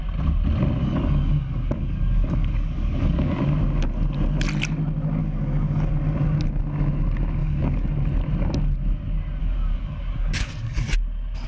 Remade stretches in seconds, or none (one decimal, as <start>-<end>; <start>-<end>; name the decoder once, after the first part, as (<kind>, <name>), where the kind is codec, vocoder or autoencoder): 0.8-3.4 (codec, DAC); 5.2-5.9; 7.4-7.9; 9.4-10.8